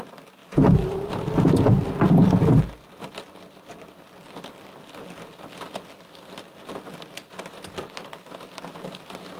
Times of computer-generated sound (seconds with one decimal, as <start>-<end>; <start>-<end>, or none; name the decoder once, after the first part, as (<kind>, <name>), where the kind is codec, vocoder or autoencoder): 0.4-1.1 (vocoder, BigVGAN v2)